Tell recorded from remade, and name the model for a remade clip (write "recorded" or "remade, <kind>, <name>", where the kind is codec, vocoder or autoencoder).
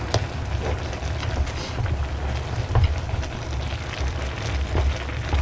recorded